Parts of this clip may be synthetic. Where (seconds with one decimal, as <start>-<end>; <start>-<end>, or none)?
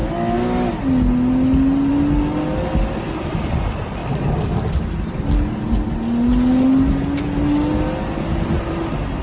none